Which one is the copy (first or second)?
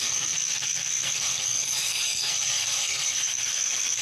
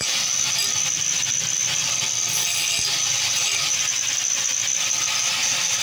first